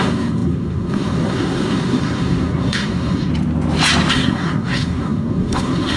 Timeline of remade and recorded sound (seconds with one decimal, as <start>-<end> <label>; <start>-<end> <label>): 0.0-3.3 remade; 3.3-4.1 recorded; 4.1-6.0 remade